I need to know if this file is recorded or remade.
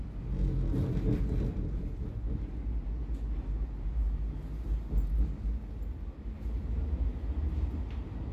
recorded